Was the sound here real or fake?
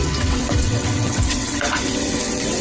fake